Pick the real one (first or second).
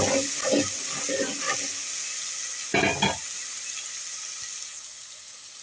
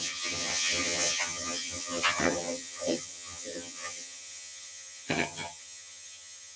first